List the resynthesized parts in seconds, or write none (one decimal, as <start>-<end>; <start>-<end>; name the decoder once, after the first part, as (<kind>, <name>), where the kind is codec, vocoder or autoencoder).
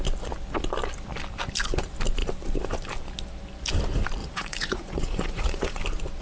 4.2-5.8 (vocoder, Vocos)